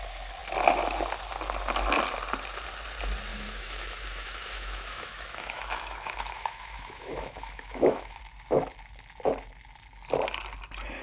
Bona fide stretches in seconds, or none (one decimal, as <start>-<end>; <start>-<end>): 0.0-3.3; 8.2-11.0